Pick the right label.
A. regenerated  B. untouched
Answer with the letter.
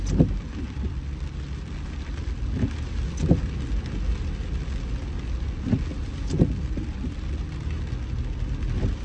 B